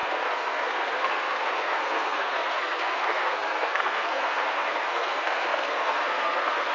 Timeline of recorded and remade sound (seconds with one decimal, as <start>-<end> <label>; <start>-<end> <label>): 0.0-6.7 remade